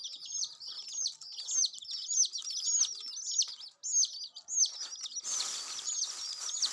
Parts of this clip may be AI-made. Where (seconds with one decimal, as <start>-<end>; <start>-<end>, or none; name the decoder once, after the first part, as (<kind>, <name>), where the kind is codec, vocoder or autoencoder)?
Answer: 0.0-2.4 (vocoder, BigVGAN v2); 5.2-6.7